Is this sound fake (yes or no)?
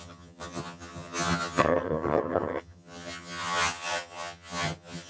yes